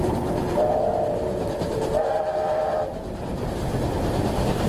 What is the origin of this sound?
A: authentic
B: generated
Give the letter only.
A